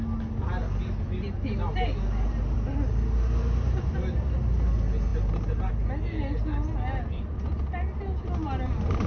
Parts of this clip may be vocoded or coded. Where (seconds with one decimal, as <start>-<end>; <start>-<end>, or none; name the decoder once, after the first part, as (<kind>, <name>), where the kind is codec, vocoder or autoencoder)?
none